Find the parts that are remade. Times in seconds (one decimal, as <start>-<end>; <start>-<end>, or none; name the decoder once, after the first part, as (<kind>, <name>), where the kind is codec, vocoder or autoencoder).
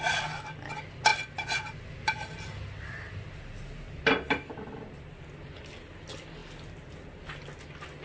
none